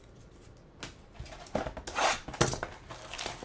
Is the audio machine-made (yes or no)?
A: no